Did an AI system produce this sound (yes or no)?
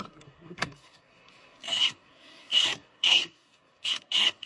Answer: yes